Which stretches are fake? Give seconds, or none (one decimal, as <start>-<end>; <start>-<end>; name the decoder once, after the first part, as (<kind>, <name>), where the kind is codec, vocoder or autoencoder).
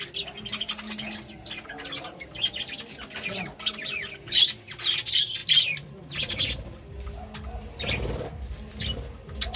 none